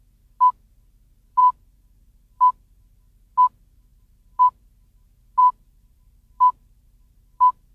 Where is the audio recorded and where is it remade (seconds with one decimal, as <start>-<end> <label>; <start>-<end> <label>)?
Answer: 0.0-1.4 recorded; 1.4-2.8 remade; 2.8-3.9 recorded; 3.9-4.7 remade; 4.7-5.4 recorded; 5.4-7.7 remade